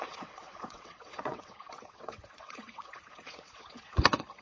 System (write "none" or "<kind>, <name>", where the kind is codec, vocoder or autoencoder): vocoder, WaveNeXt